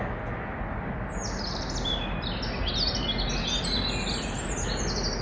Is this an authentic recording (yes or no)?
yes